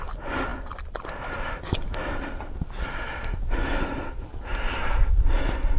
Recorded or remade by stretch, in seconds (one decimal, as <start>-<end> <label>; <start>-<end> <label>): 0.0-5.8 recorded